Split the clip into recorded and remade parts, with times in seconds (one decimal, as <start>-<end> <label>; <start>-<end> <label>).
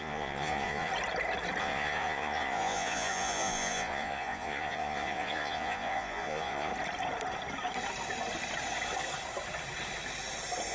0.0-0.9 remade; 0.9-1.6 recorded; 1.6-6.7 remade; 6.7-10.7 recorded